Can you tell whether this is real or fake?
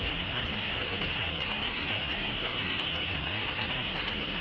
fake